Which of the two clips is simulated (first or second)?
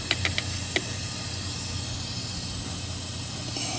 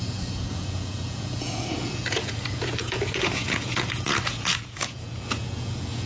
second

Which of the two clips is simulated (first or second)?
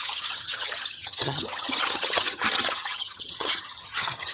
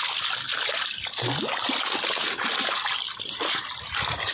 first